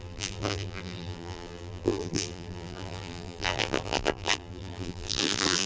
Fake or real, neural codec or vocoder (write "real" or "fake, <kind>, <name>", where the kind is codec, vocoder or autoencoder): fake, vocoder, BigVGAN v2